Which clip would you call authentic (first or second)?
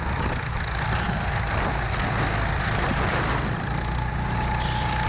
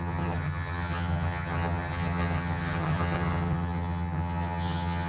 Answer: first